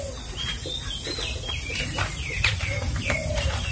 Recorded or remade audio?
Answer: recorded